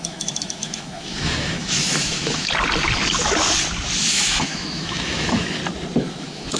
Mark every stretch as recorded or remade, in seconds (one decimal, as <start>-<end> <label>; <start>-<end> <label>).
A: 0.0-2.4 remade; 2.4-4.1 recorded; 4.1-5.6 remade; 5.6-6.1 recorded; 6.1-6.6 remade